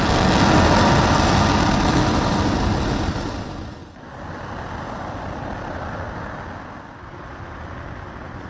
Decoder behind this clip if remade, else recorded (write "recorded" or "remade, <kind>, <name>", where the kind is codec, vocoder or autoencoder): recorded